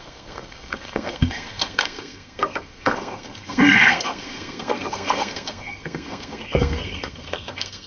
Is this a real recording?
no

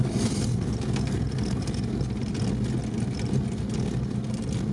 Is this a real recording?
yes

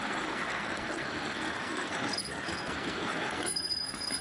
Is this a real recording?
no